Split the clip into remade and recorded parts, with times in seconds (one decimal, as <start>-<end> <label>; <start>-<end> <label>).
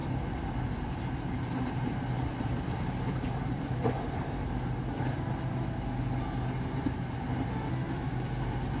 0.0-2.3 recorded; 2.3-5.4 remade; 5.4-8.8 recorded